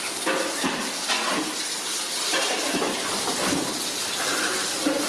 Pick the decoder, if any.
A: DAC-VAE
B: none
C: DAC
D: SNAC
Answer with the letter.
B